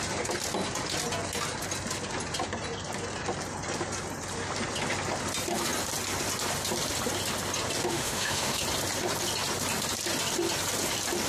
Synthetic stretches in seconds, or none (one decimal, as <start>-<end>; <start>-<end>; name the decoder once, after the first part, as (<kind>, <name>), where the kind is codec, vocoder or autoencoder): 7.8-8.6 (autoencoder, DAC-VAE)